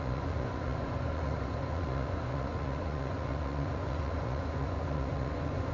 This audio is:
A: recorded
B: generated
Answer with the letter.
B